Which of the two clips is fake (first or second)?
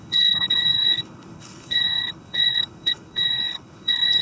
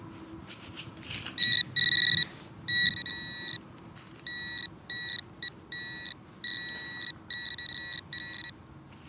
first